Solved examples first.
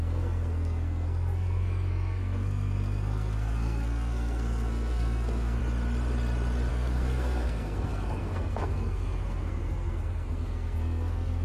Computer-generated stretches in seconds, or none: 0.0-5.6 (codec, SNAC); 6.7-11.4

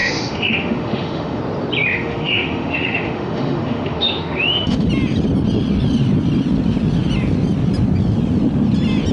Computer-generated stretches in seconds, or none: 0.0-1.4 (autoencoder, DAC-VAE); 1.9-4.9

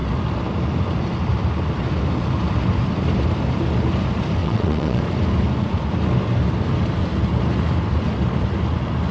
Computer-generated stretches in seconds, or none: 4.4-5.0 (vocoder, WaveNeXt)

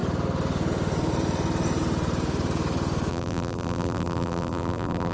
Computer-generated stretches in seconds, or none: 3.1-5.1 (vocoder, BigVGAN v2)